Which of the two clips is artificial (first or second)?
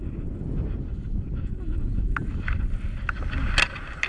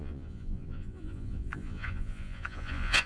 second